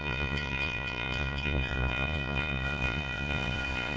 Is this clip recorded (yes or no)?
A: no